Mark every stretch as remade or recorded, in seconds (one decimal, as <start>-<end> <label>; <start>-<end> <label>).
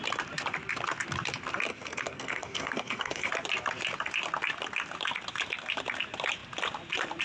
0.0-1.7 recorded; 1.7-3.3 remade; 3.3-7.2 recorded